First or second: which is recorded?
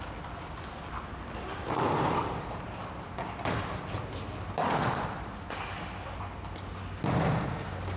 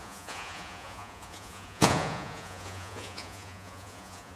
first